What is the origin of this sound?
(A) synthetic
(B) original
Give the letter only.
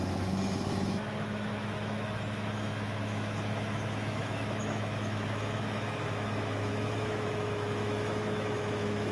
A